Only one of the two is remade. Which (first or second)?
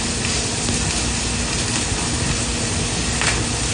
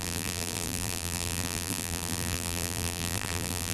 second